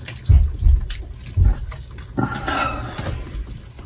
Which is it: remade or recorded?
recorded